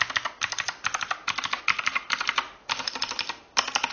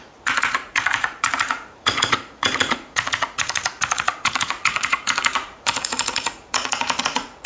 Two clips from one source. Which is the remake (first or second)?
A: second